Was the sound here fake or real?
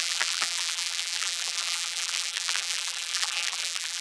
fake